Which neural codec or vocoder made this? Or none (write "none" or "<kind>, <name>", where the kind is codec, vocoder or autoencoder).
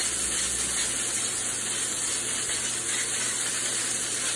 none